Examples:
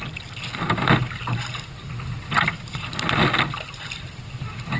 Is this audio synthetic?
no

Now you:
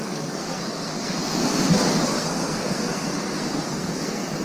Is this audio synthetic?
yes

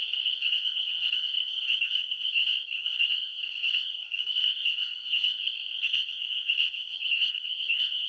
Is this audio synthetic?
yes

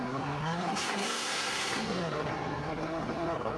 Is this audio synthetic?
yes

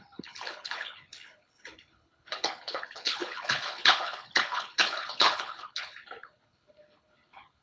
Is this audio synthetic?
yes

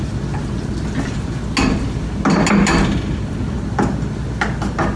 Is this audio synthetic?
no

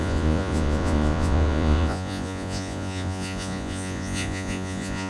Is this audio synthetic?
yes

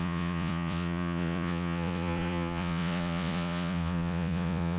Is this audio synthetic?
yes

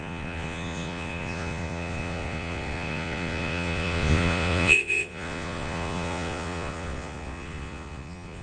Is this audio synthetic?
yes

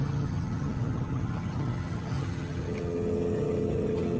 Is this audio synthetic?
yes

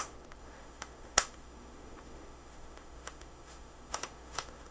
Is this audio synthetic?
yes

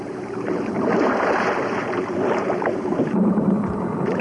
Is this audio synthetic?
yes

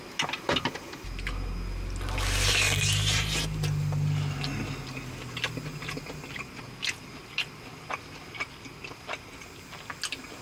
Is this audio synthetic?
no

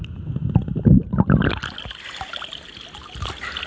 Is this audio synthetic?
no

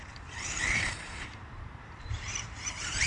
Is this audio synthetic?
yes